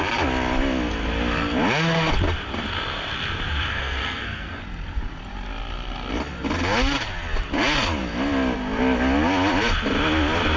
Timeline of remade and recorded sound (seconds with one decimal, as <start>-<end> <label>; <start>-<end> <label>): 0.0-3.7 recorded; 3.7-4.6 remade; 4.6-10.6 recorded